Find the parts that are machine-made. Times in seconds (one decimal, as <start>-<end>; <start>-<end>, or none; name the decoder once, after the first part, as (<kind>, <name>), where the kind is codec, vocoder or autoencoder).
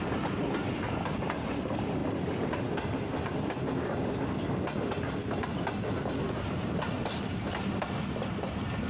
none